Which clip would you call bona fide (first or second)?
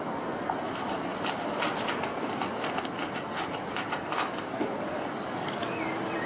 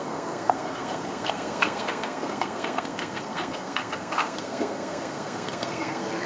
first